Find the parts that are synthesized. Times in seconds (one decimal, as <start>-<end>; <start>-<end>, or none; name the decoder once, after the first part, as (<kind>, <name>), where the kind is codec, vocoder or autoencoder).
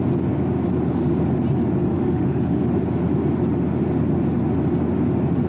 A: 1.8-2.6 (autoencoder, DAC-VAE)